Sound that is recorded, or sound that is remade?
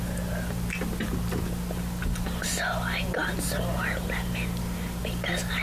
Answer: recorded